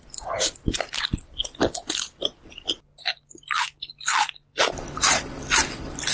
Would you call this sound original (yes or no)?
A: yes